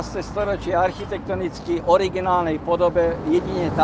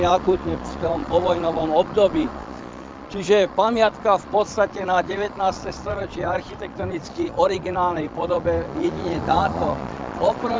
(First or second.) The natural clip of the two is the first